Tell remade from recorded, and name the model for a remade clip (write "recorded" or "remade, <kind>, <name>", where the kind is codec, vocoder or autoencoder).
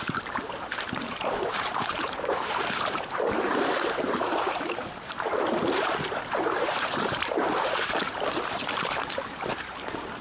remade, vocoder, BigVGAN v2